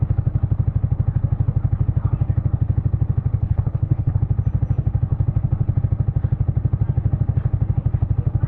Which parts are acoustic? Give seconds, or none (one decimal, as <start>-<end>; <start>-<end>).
0.0-3.4; 4.2-8.5